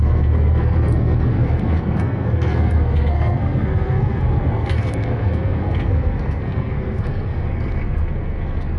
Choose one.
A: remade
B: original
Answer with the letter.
A